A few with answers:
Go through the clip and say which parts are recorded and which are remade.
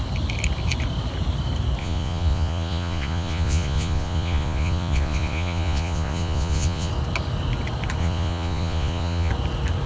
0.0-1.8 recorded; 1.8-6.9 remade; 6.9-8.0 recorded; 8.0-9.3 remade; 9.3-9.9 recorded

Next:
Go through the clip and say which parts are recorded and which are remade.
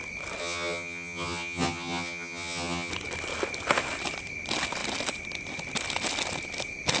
0.0-0.4 recorded; 0.4-2.9 remade; 2.9-7.0 recorded